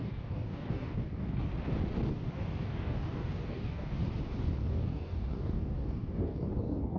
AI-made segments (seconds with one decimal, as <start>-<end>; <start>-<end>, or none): 0.0-1.5; 2.1-4.0; 4.7-7.0